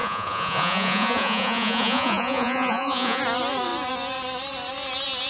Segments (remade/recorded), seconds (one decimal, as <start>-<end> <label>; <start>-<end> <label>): 0.0-3.2 remade; 3.2-5.3 recorded